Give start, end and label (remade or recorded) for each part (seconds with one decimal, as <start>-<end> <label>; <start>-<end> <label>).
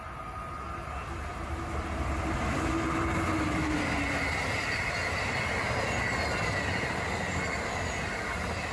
0.0-8.7 recorded